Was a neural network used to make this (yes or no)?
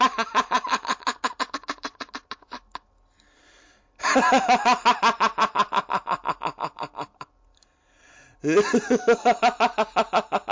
no